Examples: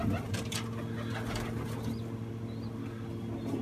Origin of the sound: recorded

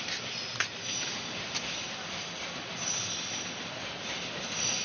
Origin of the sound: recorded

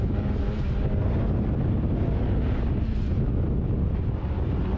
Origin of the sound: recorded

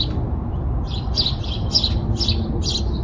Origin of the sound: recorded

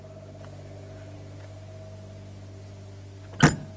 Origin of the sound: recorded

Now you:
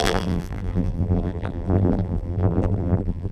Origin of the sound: remade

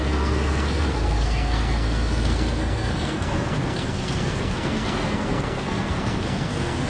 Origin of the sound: remade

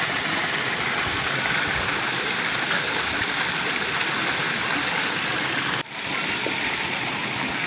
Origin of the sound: recorded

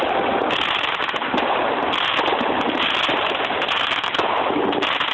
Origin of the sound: recorded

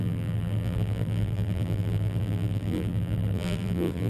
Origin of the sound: remade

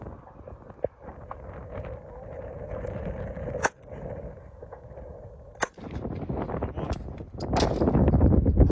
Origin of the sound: recorded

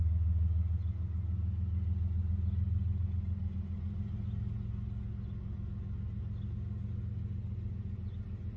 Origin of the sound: recorded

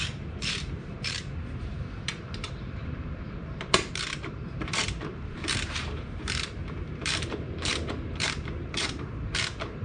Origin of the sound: remade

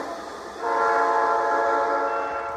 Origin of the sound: recorded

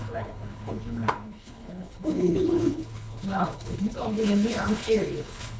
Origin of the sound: remade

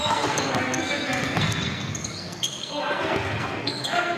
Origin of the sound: remade